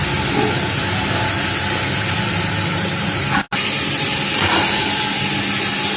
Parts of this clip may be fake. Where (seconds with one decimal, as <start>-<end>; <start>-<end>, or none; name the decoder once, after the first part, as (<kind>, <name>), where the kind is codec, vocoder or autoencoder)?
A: none